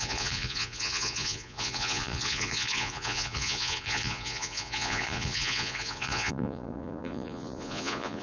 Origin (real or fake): fake